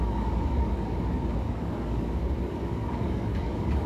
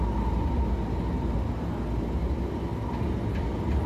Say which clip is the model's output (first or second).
first